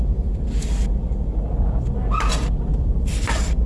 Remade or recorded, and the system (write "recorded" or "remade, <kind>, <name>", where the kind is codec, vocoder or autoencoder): remade, vocoder, BigVGAN v2